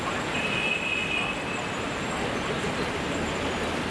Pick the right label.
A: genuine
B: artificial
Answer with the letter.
A